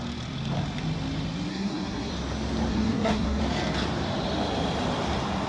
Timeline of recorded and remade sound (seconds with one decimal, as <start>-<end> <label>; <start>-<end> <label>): 0.0-1.5 recorded; 1.5-2.1 remade; 2.1-2.7 recorded; 2.7-3.4 remade; 3.4-5.5 recorded